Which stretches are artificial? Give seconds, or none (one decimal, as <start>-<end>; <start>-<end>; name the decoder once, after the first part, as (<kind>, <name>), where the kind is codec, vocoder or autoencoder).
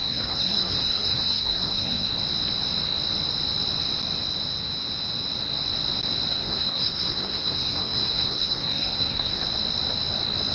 0.0-2.1 (codec, SNAC); 6.3-9.4